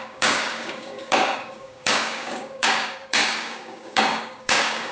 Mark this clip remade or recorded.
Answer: remade